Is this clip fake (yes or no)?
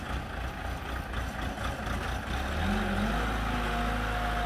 no